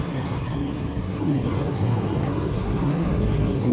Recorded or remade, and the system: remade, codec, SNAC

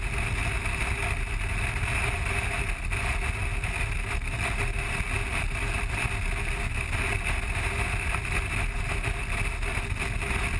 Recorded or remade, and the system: recorded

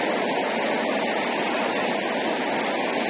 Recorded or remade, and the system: recorded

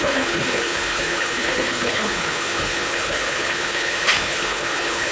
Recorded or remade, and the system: remade, codec, HILCodec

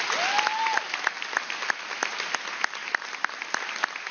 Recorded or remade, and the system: recorded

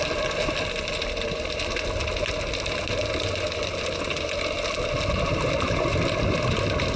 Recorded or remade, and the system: recorded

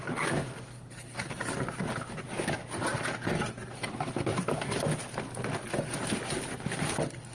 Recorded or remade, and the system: recorded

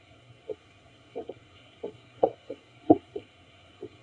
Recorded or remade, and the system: remade, codec, SNAC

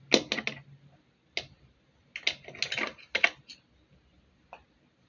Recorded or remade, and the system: recorded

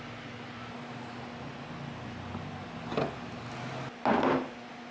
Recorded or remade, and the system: recorded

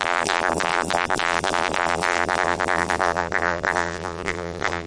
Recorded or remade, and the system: remade, vocoder, BigVGAN v2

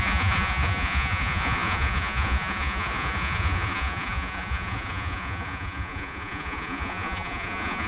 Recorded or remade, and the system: remade, vocoder, Vocos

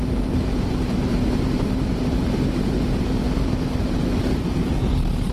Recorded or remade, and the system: remade, vocoder, BigVGAN v2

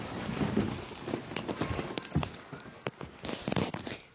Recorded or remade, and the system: recorded